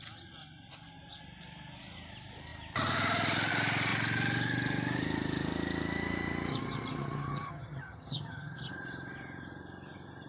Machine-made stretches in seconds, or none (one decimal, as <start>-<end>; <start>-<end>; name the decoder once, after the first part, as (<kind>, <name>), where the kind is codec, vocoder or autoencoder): 6.5-8.7 (vocoder, HiFi-GAN)